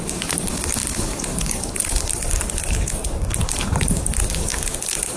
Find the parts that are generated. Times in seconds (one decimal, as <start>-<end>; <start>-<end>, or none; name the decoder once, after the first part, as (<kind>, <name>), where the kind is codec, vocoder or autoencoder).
0.0-5.2 (codec, DAC)